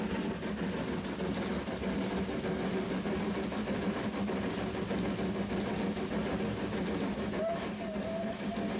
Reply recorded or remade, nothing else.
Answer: recorded